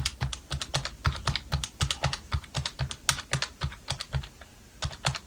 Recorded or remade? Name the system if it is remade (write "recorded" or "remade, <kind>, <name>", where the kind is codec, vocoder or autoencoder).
recorded